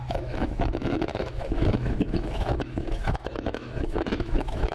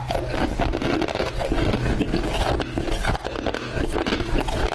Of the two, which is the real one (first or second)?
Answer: second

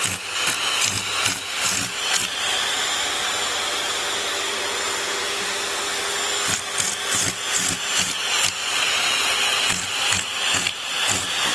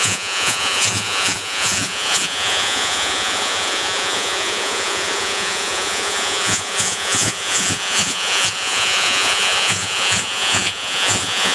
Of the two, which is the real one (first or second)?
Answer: first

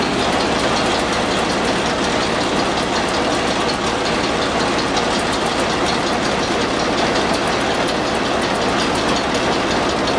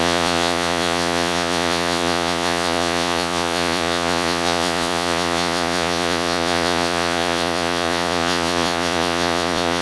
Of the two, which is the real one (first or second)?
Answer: first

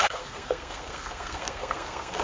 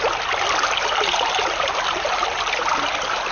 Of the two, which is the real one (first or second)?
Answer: second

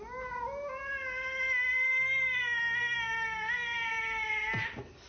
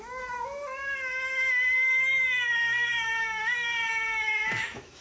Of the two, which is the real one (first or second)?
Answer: first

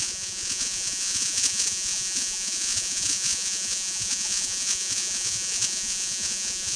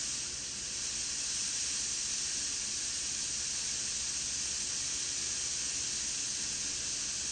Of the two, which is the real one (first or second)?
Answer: second